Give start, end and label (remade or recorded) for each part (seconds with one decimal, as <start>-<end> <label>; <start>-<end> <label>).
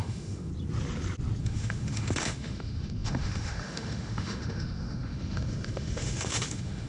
0.0-0.5 remade; 0.5-1.4 recorded; 1.4-6.9 remade